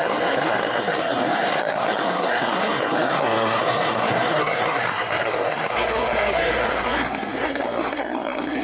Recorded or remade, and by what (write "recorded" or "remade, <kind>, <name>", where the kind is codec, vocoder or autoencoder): remade, codec, SNAC